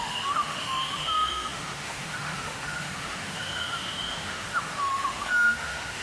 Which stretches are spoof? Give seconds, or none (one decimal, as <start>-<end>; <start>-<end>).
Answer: 0.0-6.0